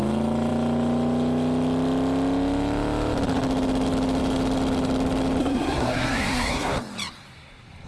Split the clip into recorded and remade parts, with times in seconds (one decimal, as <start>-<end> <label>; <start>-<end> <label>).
0.0-5.4 recorded; 5.4-6.7 remade; 6.7-7.9 recorded